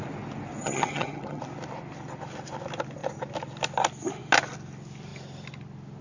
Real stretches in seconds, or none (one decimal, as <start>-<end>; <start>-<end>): 0.0-0.6; 1.4-6.0